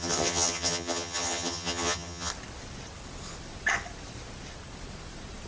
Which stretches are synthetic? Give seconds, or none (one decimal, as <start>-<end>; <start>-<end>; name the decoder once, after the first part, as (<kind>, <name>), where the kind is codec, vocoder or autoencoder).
0.0-2.3 (vocoder, HiFi-GAN)